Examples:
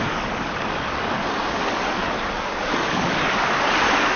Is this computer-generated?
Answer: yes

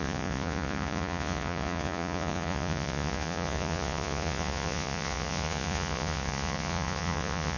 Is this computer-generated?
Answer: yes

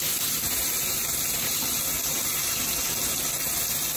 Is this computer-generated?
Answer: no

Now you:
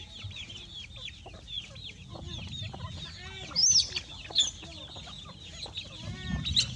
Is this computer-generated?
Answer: no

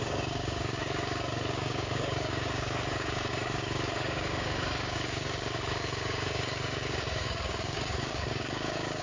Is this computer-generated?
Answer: yes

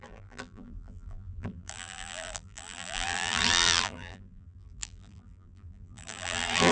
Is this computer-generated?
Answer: yes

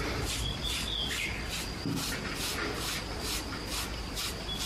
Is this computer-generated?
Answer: no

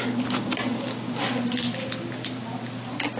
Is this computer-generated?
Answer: no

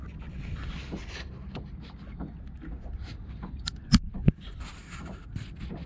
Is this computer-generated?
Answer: no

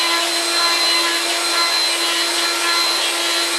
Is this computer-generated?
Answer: no